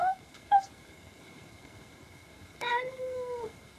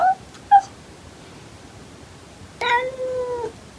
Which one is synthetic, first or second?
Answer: first